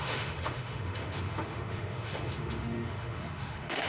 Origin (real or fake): fake